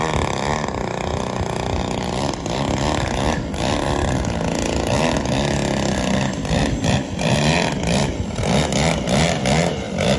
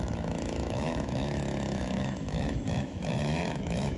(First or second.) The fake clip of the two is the second